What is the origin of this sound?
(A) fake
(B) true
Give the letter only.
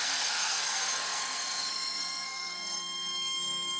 A